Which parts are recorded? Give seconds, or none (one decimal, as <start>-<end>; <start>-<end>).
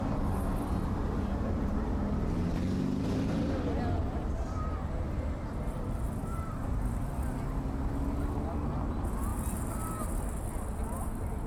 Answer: 0.0-6.2; 7.1-11.5